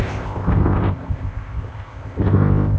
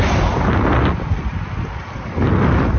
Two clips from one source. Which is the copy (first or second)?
first